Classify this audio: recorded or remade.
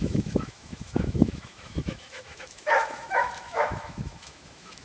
remade